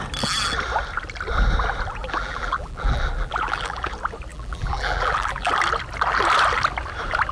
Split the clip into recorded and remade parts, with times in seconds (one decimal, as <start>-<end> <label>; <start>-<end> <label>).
0.0-2.0 recorded; 2.0-3.9 remade; 3.9-4.3 recorded; 4.3-5.5 remade; 5.5-7.3 recorded